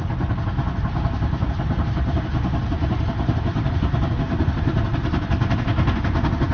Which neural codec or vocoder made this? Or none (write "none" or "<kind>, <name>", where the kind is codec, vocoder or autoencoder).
none